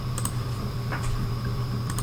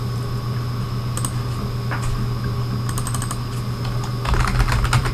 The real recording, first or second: second